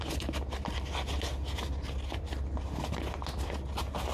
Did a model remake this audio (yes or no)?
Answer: no